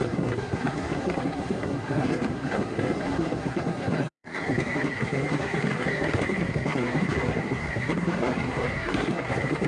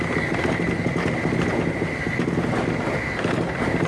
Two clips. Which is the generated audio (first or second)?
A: first